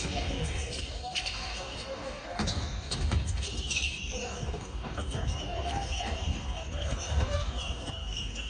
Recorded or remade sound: remade